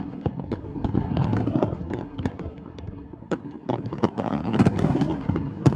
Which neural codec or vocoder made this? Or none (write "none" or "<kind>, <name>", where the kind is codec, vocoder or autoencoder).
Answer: codec, SNAC